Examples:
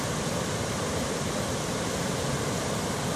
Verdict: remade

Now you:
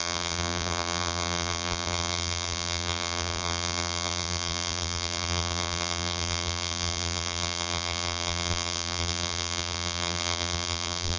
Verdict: remade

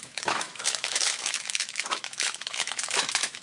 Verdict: remade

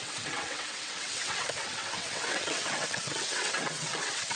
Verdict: remade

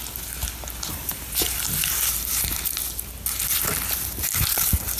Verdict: recorded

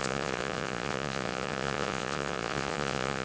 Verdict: remade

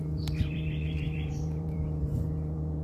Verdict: remade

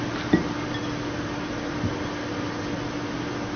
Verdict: recorded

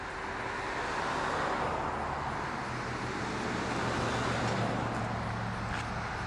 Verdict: recorded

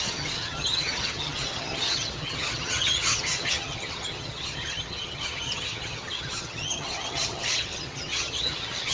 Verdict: remade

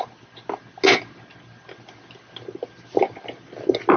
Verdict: recorded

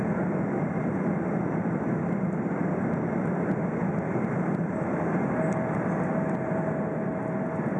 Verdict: recorded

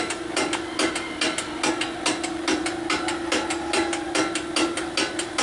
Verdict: recorded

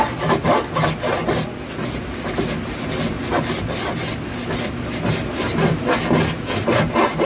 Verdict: recorded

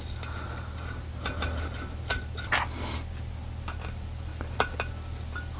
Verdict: recorded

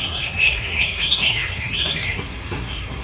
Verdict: remade